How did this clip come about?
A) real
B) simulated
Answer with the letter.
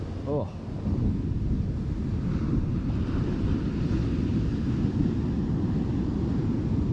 A